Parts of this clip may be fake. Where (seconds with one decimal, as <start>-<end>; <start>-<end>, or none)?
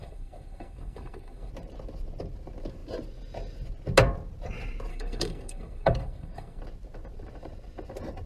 0.0-1.5; 4.9-6.6